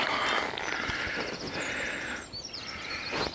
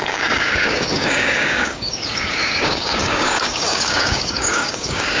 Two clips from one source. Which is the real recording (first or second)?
first